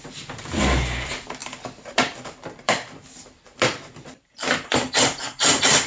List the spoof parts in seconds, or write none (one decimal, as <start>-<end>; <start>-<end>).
1.4-4.9